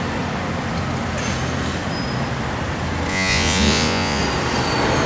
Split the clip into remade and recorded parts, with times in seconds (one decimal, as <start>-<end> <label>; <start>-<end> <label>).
0.0-3.1 recorded; 3.1-4.2 remade; 4.2-5.1 recorded